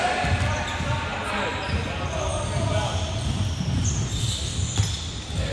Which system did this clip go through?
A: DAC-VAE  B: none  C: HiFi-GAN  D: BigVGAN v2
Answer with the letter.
B